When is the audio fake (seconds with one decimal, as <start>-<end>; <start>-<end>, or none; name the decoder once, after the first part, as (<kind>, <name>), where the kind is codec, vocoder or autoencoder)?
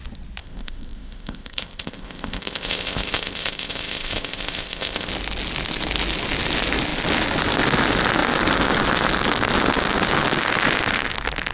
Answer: 0.4-5.1 (codec, ZipCodec)